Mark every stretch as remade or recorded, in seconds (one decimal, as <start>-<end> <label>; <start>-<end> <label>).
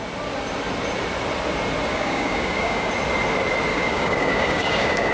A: 0.0-1.9 recorded; 1.9-2.9 remade; 2.9-3.7 recorded; 3.7-5.1 remade